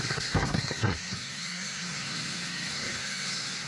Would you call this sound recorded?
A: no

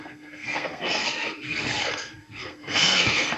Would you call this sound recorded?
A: no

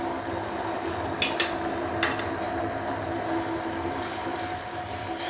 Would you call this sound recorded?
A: yes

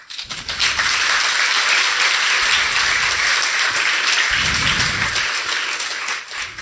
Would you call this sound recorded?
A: yes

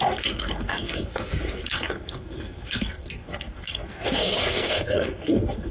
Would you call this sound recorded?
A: no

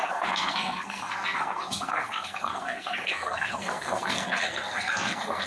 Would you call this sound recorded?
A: no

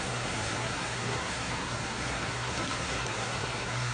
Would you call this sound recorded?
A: no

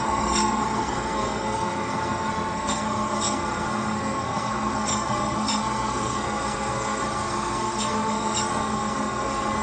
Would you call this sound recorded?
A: no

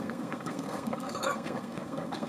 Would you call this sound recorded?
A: no